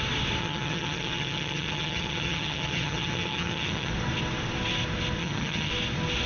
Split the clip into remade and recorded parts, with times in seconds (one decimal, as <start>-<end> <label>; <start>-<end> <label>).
0.0-0.4 recorded; 0.4-3.9 remade; 3.9-5.2 recorded; 5.2-5.7 remade; 5.7-6.3 recorded